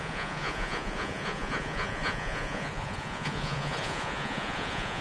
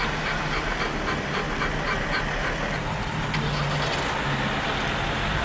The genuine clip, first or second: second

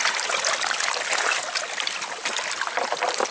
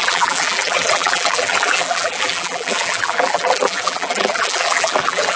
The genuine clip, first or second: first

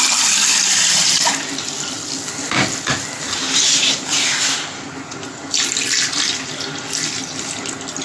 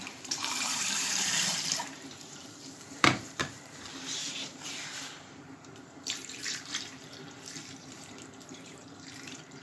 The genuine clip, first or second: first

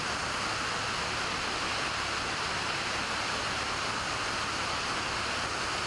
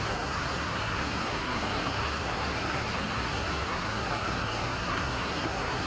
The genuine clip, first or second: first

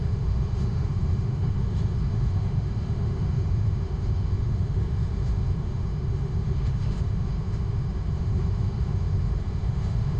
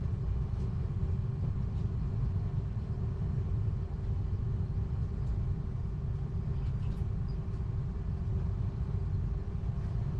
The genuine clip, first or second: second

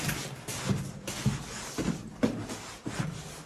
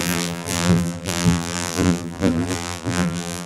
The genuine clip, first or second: first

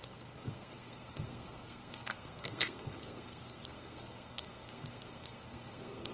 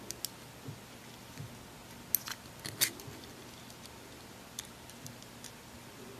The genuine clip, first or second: second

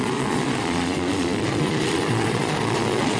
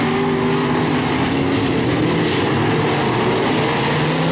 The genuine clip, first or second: second